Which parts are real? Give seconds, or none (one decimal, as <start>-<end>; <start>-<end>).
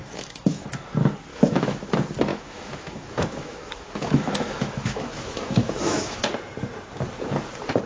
0.6-1.3; 1.9-2.3; 6.2-7.9